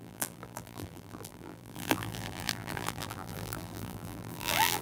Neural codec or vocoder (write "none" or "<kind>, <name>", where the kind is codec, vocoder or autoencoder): vocoder, BigVGAN v2